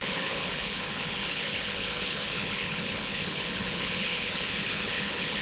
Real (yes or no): no